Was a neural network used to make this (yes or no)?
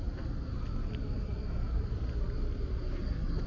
no